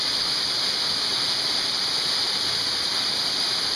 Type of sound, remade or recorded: remade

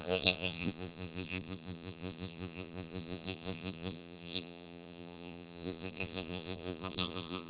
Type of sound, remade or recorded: remade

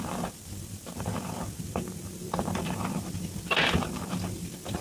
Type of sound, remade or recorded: remade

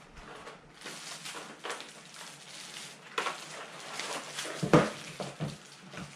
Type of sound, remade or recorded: recorded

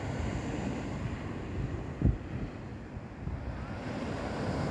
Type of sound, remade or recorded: recorded